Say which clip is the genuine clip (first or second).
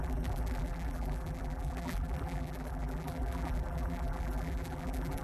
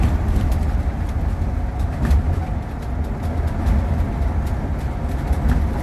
second